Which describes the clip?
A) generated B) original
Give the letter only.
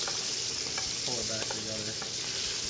B